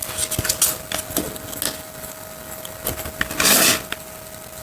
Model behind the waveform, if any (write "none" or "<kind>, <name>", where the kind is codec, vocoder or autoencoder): none